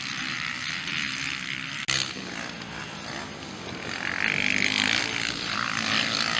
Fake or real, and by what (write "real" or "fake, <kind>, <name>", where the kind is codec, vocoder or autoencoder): real